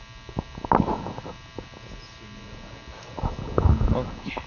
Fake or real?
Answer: real